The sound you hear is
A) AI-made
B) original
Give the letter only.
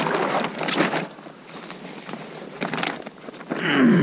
B